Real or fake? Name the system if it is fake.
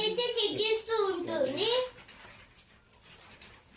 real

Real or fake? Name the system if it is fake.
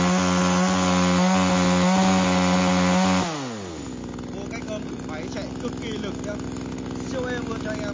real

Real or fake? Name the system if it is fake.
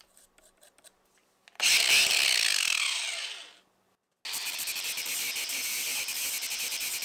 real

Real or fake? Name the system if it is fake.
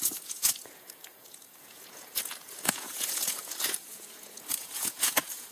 fake, vocoder, Vocos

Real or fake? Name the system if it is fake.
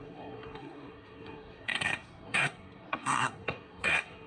fake, codec, SNAC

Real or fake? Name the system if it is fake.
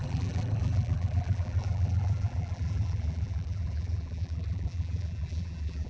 fake, vocoder, BigVGAN v2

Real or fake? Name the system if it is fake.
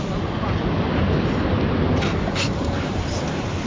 real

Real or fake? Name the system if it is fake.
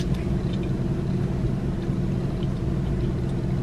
real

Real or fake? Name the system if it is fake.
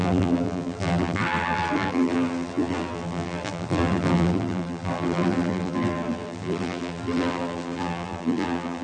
fake, vocoder, BigVGAN v2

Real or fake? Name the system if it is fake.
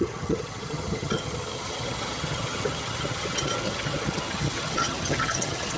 fake, vocoder, HiFi-GAN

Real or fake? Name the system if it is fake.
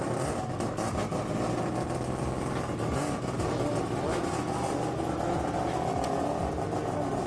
real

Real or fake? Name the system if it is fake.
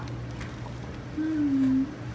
real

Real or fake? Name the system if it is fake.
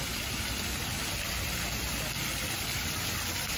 real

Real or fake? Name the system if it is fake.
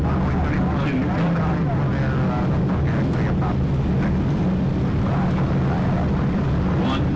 real